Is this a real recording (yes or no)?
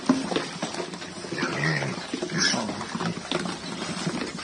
yes